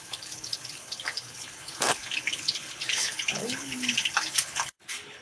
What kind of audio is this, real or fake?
fake